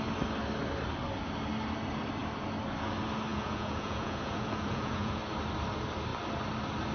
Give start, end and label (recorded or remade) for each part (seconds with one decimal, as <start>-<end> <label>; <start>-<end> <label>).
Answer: 0.0-3.3 recorded; 3.3-5.2 remade; 5.2-6.9 recorded